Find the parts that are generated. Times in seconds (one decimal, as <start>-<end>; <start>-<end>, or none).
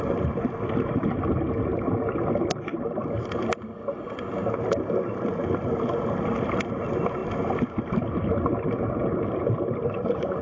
0.0-7.2; 8.7-10.4